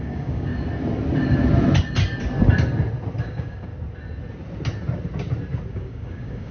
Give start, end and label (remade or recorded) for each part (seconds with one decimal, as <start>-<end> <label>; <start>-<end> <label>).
0.0-0.5 remade; 0.5-3.2 recorded; 3.2-3.7 remade; 3.7-5.7 recorded; 5.7-6.5 remade